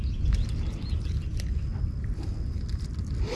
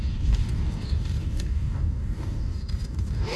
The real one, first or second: first